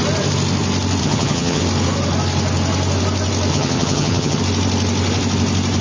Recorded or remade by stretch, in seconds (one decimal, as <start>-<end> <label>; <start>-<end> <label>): 0.0-1.0 recorded; 1.0-1.6 remade; 1.6-3.5 recorded; 3.5-4.4 remade; 4.4-5.8 recorded